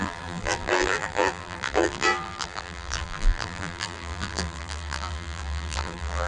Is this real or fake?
fake